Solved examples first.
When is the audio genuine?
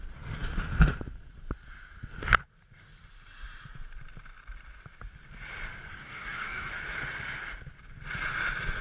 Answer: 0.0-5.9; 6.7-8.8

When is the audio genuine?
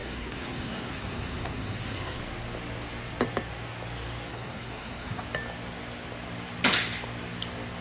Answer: 2.2-4.3; 5.2-7.8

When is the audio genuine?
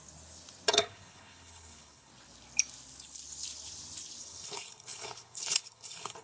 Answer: 0.0-0.7; 2.1-4.2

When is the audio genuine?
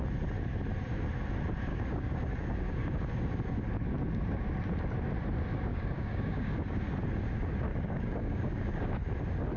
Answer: 0.0-1.7; 3.1-5.7; 6.8-7.7; 9.1-9.6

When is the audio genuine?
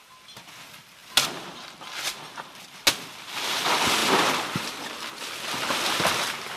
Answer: 0.0-6.6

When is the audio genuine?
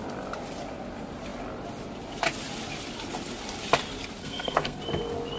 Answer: 0.0-4.2; 4.8-5.4